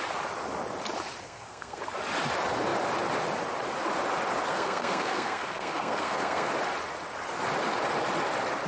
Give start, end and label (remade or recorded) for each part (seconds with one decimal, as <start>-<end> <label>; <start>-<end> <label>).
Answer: 0.0-1.2 recorded; 1.2-1.8 remade; 1.8-4.5 recorded; 4.5-6.5 remade; 6.5-8.7 recorded